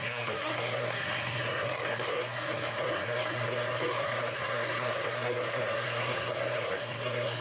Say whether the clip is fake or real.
fake